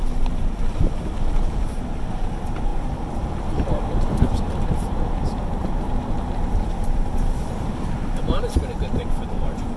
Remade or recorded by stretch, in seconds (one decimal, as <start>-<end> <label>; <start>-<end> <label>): 0.0-9.8 remade